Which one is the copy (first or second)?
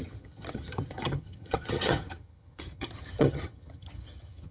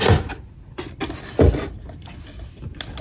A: first